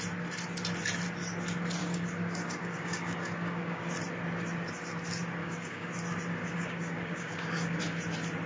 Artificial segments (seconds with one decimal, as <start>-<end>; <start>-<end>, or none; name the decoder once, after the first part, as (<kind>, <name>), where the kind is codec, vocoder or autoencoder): 1.8-3.8 (codec, DAC); 5.4-5.9; 6.4-7.8